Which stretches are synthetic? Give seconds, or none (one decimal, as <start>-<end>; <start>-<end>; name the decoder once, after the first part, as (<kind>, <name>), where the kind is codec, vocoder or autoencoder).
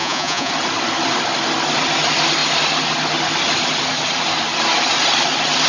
0.0-0.5 (vocoder, Vocos)